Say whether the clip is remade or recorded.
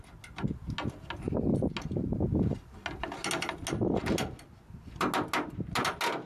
recorded